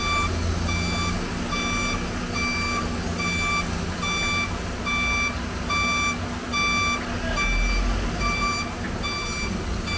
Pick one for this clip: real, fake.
real